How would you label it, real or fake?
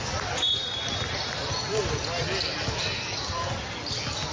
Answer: real